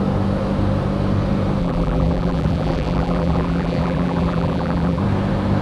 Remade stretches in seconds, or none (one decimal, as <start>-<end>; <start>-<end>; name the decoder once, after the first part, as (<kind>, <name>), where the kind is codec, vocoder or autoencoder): 1.6-5.0 (vocoder, BigVGAN v2)